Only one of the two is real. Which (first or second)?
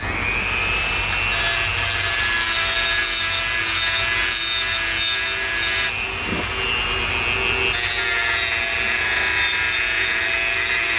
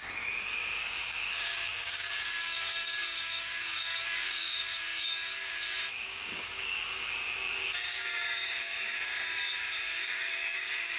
first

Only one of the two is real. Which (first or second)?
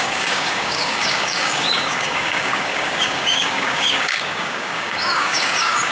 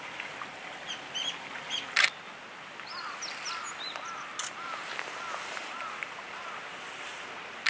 second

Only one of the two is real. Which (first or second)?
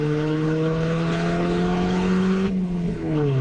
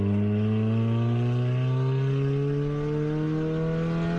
second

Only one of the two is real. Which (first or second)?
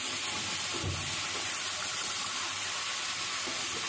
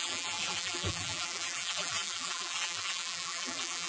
first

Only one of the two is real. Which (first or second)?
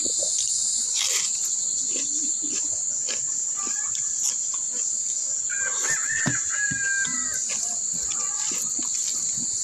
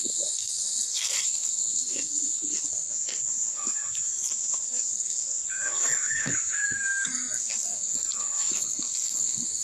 first